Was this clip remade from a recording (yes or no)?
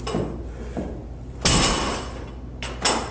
no